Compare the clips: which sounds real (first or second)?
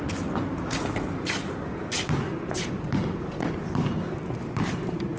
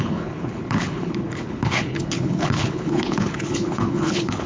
first